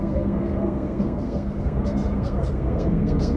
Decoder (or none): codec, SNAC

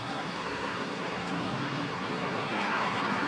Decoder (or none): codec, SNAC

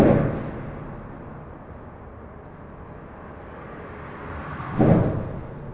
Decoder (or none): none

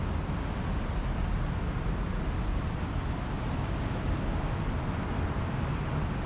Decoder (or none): none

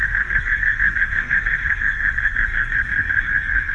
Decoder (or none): codec, SNAC